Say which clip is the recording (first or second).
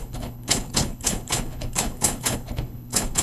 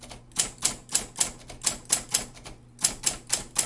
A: second